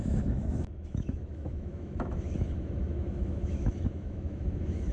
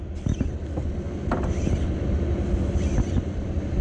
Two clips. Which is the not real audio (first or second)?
first